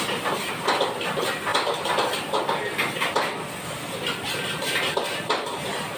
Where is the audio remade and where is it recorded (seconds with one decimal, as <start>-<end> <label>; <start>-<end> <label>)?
0.0-6.0 recorded